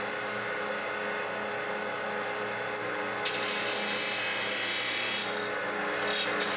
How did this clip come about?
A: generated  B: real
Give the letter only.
B